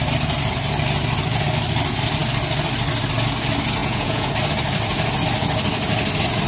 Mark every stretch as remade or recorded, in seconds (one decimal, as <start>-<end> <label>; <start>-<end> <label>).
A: 0.0-3.8 recorded; 3.8-4.3 remade; 4.3-6.5 recorded